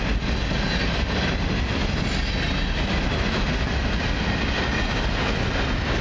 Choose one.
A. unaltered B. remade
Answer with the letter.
A